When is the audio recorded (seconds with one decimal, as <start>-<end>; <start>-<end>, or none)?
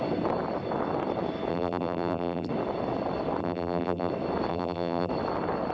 0.0-1.5; 2.5-3.4; 4.1-4.5; 5.1-5.7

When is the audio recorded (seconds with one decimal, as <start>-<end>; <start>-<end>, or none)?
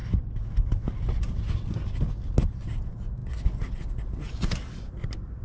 0.0-5.4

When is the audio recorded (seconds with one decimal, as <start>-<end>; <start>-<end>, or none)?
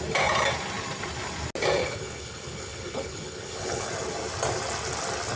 0.0-1.8; 3.9-5.4